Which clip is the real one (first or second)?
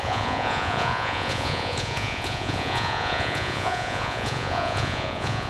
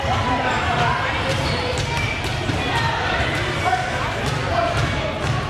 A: second